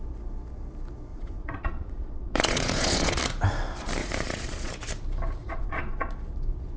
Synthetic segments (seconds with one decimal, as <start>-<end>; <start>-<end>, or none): 1.1-3.2; 4.0-4.7; 5.4-6.1